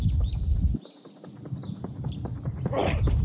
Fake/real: real